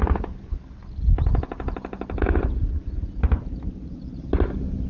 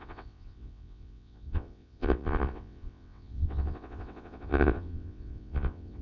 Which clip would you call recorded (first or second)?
first